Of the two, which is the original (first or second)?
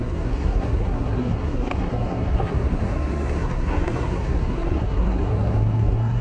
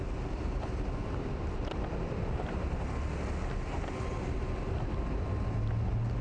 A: second